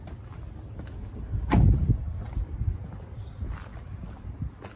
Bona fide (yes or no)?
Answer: yes